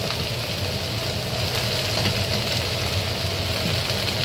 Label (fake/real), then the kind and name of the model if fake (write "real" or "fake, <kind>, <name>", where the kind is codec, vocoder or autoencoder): real